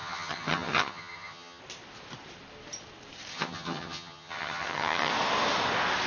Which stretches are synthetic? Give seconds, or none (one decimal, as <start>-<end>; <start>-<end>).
0.0-1.6; 3.3-5.1